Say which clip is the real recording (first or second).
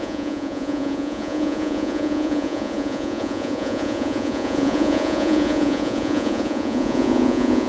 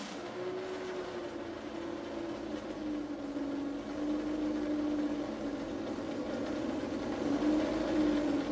second